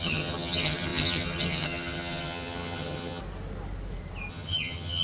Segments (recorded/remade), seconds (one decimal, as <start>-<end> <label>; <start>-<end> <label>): 0.0-3.2 remade; 3.2-4.3 recorded; 4.3-5.0 remade